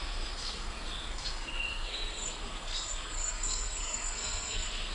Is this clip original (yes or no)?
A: no